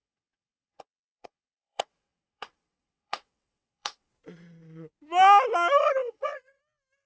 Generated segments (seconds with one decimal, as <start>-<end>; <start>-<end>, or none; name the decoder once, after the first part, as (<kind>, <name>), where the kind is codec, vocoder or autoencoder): 0.0-4.1 (vocoder, WaveNeXt); 6.0-6.6